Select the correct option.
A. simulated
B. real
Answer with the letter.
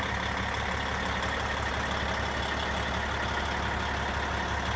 B